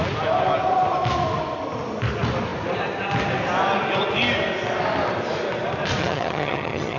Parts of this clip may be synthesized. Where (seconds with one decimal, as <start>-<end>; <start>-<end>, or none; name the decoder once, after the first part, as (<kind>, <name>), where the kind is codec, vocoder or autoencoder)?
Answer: 6.0-7.0 (vocoder, HiFi-GAN)